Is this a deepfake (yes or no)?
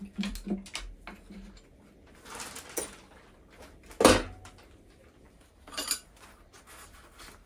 no